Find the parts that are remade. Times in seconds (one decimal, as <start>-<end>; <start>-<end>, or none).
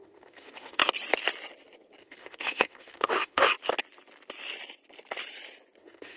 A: 0.0-0.8; 2.0-3.5; 5.8-6.2